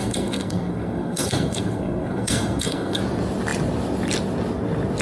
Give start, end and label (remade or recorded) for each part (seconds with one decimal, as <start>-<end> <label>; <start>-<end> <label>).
0.0-3.0 remade; 3.0-5.0 recorded